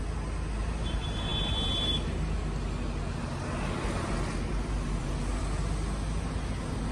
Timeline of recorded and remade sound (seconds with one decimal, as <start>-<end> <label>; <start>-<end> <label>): 0.0-6.9 recorded